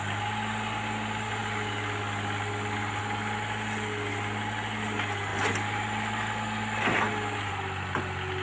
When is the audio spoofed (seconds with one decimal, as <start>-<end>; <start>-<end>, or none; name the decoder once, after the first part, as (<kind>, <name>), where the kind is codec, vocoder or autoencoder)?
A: none